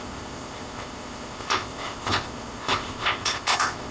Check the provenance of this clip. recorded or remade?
remade